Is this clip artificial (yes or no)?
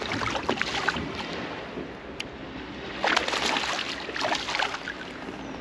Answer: no